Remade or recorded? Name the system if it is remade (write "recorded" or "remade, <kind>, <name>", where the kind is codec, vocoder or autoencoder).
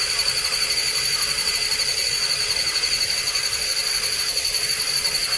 recorded